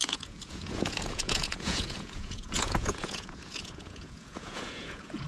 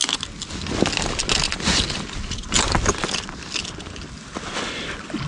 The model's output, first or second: first